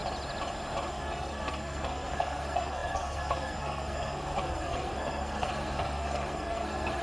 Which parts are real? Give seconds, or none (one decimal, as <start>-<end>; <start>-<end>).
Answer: 0.0-0.9